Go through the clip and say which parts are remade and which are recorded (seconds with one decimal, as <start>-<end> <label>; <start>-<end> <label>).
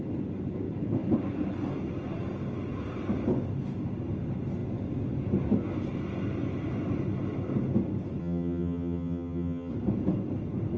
0.0-8.2 recorded; 8.2-9.7 remade; 9.7-10.8 recorded